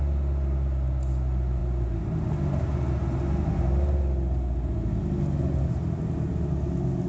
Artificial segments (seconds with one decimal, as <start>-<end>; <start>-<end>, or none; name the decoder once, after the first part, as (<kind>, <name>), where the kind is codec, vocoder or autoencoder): none